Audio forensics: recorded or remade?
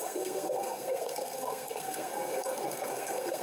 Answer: remade